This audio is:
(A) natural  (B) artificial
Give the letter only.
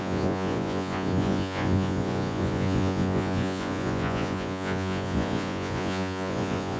B